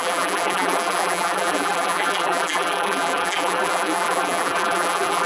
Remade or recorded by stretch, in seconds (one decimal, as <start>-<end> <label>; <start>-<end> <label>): 0.0-5.3 remade